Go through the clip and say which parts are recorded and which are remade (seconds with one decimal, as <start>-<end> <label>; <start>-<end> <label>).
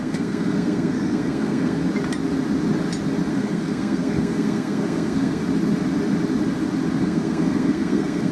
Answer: 0.0-1.8 remade; 1.8-3.3 recorded; 3.3-5.4 remade; 5.4-6.9 recorded; 6.9-8.3 remade